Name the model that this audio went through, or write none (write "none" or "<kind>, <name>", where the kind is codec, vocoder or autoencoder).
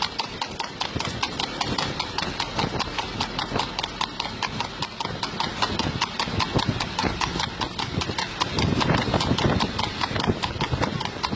none